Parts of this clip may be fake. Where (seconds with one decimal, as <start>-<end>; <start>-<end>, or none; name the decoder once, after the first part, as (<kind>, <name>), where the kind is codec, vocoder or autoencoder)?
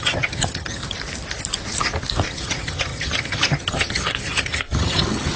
0.0-0.8 (vocoder, HiFi-GAN); 2.3-5.4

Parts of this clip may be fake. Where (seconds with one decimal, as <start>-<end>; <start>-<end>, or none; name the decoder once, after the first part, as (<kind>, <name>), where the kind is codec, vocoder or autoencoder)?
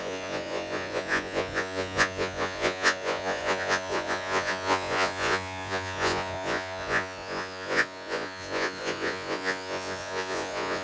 0.0-10.8 (vocoder, Vocos)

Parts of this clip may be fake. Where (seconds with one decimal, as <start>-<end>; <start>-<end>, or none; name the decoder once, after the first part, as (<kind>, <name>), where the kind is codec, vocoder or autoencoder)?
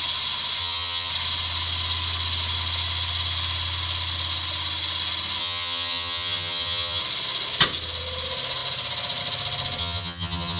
0.6-1.1 (vocoder, HiFi-GAN); 5.4-7.0; 9.8-10.6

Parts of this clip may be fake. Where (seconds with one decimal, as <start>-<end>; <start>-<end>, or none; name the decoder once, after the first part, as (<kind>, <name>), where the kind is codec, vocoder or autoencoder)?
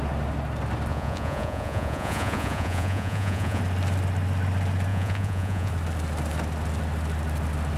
0.9-3.6 (vocoder, Vocos); 4.9-5.7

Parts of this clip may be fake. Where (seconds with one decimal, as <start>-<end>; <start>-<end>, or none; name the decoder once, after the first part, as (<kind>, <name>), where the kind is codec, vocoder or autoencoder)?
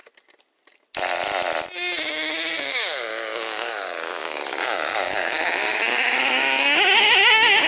2.1-7.7 (codec, DAC)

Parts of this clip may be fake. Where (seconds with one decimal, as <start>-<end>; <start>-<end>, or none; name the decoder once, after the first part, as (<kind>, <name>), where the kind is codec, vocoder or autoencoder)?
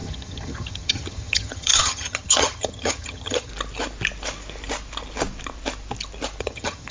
0.0-3.5 (vocoder, HiFi-GAN); 6.4-6.9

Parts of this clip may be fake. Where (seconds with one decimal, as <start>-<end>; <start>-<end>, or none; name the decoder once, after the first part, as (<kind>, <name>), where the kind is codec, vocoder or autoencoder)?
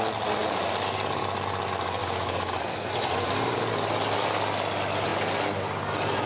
2.0-2.6 (codec, DAC)